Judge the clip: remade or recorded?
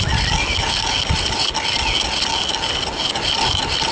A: recorded